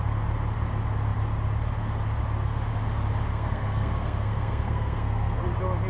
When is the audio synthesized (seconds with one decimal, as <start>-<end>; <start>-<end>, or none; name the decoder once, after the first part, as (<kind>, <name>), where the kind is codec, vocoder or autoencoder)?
3.3-5.4 (codec, SNAC)